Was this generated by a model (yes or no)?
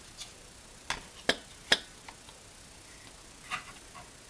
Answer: no